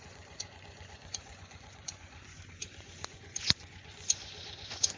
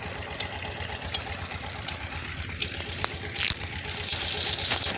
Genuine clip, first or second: second